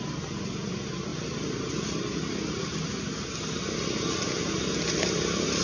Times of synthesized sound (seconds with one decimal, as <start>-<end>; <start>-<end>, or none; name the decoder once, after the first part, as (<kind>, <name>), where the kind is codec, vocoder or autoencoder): none